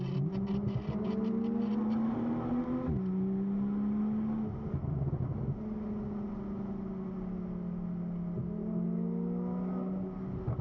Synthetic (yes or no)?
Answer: no